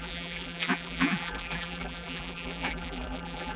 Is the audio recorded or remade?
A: remade